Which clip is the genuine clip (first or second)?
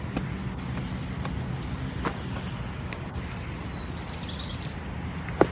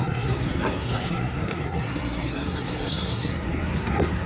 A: first